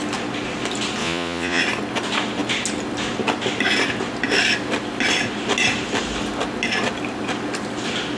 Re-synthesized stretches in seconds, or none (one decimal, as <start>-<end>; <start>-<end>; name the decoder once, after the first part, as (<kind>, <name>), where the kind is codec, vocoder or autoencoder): 1.0-1.6 (vocoder, Vocos)